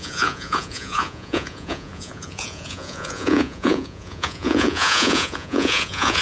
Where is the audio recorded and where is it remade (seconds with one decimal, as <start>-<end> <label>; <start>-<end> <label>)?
0.0-6.2 remade